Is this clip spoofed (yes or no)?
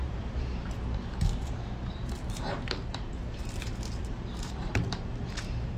yes